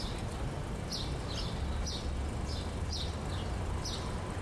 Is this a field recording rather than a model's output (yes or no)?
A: yes